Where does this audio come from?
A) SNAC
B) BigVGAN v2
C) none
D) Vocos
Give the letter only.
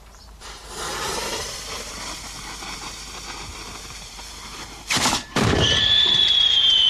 B